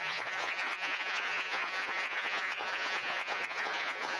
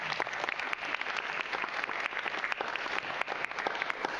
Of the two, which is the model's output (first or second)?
first